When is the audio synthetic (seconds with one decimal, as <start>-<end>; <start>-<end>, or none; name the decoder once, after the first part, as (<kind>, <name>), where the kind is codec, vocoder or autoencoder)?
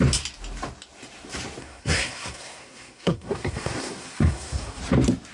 1.6-4.8 (codec, SNAC)